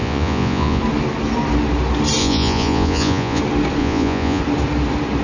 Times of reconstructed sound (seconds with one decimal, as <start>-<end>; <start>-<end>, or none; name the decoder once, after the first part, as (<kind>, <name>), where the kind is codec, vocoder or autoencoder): 0.0-0.8 (vocoder, Vocos); 2.2-3.4; 3.8-4.4